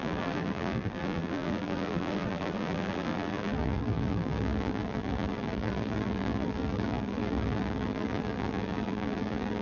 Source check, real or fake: fake